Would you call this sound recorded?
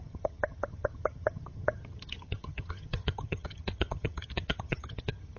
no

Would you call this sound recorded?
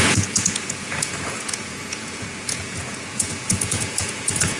no